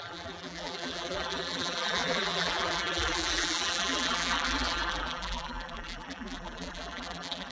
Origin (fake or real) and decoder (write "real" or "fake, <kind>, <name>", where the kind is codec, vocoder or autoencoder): fake, vocoder, BigVGAN v2